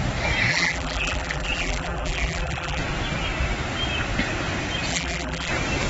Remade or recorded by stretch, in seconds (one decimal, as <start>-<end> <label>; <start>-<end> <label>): 0.0-0.5 recorded; 0.5-2.8 remade; 2.8-4.9 recorded; 4.9-5.5 remade; 5.5-5.9 recorded

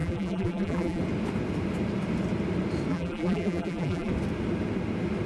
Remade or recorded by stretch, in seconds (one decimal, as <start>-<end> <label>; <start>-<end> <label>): 0.0-1.0 remade; 1.0-2.9 recorded; 2.9-4.1 remade; 4.1-5.3 recorded

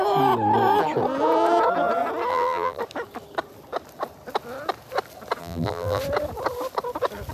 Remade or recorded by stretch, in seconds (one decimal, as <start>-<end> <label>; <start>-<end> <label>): 0.0-2.3 recorded; 2.3-2.8 remade; 2.8-5.4 recorded; 5.4-6.0 remade; 6.0-7.3 recorded

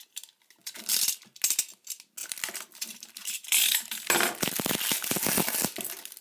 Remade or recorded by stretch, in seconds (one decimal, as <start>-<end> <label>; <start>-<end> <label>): 0.0-0.6 recorded; 0.6-1.2 remade; 1.2-2.2 recorded; 2.2-4.7 remade; 4.7-6.2 recorded

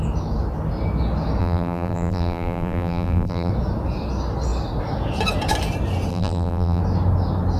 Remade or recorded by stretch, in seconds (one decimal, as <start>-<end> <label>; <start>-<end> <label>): 0.0-1.4 recorded; 1.4-3.5 remade; 3.5-6.1 recorded; 6.1-6.8 remade; 6.8-7.6 recorded

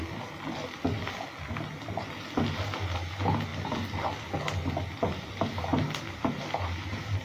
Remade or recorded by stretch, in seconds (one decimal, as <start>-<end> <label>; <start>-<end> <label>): 0.0-7.2 recorded

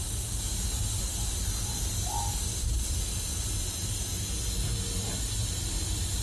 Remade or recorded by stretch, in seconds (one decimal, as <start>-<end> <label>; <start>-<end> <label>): 0.0-1.0 recorded; 1.0-3.3 remade; 3.3-6.2 recorded